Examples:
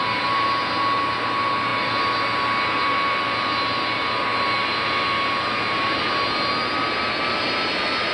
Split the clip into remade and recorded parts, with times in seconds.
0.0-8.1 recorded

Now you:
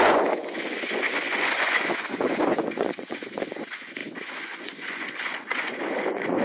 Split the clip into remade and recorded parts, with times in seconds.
0.0-6.4 remade

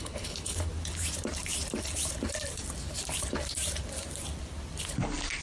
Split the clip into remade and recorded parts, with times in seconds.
0.0-0.7 remade; 0.7-5.4 recorded

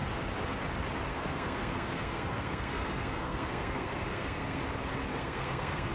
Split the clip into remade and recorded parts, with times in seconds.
0.0-1.1 recorded; 1.1-4.6 remade; 4.6-5.1 recorded; 5.1-5.9 remade

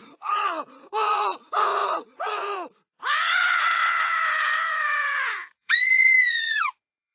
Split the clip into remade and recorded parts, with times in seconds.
0.0-7.1 remade

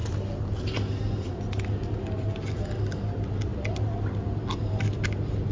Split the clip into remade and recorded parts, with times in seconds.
0.0-5.5 recorded

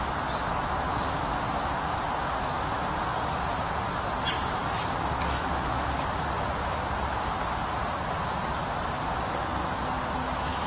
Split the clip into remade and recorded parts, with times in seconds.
0.0-3.1 recorded; 3.1-8.2 remade; 8.2-10.7 recorded